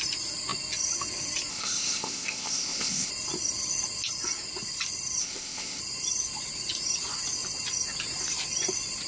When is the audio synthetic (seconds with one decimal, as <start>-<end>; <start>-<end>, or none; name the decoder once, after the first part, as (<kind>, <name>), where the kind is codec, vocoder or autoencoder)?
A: 1.5-3.1 (codec, ZipCodec); 5.2-5.8